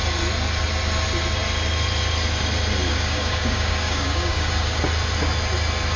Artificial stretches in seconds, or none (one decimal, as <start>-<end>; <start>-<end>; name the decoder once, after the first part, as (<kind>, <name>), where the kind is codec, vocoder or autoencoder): 2.9-4.8 (codec, DAC)